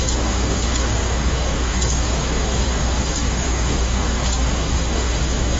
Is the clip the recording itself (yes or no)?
no